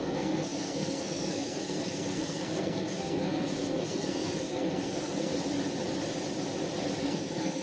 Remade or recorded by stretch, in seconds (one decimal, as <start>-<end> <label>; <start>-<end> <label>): 0.0-5.3 remade; 5.3-7.0 recorded; 7.0-7.6 remade